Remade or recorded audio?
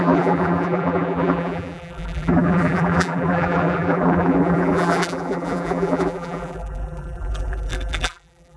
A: remade